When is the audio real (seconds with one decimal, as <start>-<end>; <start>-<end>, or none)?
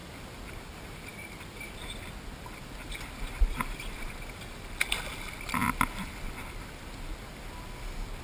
0.0-8.2